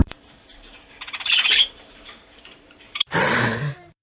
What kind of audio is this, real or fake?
fake